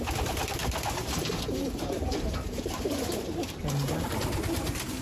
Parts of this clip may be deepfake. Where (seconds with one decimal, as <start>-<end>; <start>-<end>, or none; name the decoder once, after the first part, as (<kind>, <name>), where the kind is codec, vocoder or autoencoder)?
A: 0.6-3.6 (vocoder, BigVGAN v2)